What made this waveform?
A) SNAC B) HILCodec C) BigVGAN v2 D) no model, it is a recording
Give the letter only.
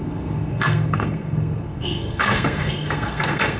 A